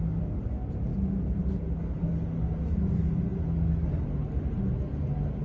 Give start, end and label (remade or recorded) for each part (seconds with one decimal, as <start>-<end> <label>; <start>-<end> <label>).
0.0-5.4 recorded